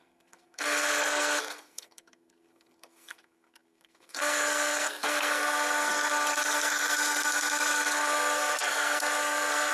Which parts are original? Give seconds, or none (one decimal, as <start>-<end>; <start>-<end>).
none